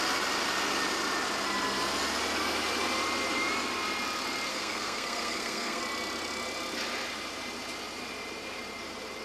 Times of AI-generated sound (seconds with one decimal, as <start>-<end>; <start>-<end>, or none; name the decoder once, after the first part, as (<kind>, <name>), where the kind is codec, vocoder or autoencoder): 4.5-5.8 (codec, SNAC)